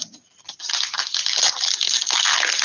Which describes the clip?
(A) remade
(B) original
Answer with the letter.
B